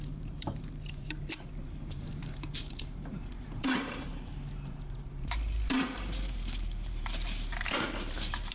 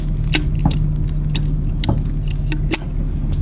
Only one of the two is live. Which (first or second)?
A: second